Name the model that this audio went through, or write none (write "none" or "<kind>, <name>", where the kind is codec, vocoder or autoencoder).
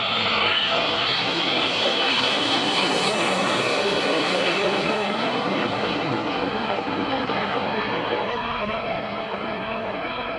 codec, SNAC